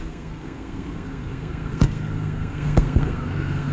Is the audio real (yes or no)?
no